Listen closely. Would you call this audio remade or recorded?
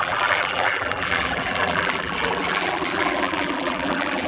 remade